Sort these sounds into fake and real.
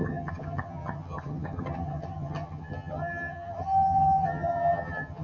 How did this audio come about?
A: fake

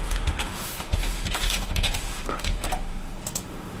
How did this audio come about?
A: fake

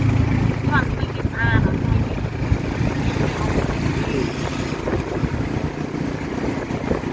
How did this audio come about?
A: real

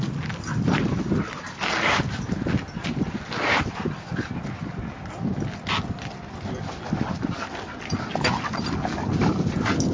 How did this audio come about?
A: real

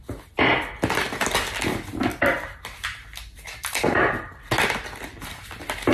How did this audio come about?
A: real